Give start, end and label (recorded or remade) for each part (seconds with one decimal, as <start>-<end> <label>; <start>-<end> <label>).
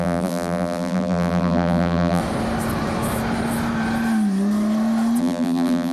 0.0-2.2 remade; 2.2-5.2 recorded; 5.2-5.9 remade